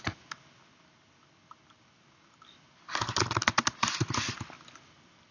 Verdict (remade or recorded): recorded